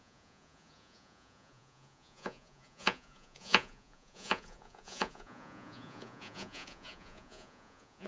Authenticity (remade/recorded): remade